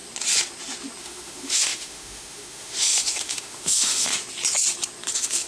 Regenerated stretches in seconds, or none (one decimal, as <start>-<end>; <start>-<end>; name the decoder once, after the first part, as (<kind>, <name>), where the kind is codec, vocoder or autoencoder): 1.0-4.1 (autoencoder, DAC-VAE); 5.1-5.5